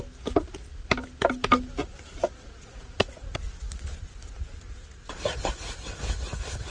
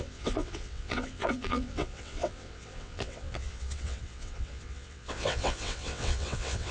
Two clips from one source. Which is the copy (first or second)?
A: second